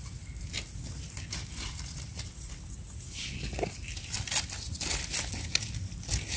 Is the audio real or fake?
real